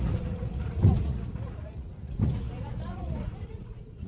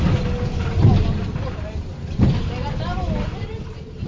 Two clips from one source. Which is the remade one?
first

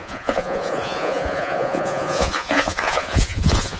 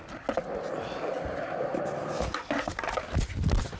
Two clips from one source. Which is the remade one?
first